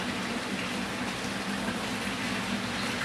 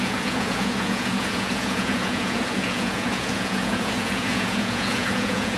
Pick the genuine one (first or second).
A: first